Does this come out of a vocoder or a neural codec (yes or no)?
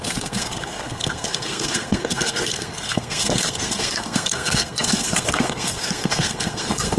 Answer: yes